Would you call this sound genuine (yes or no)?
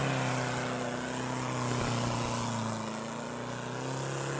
yes